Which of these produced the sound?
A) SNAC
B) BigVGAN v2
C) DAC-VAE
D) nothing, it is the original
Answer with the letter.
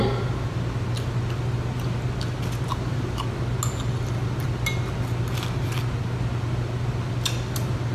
D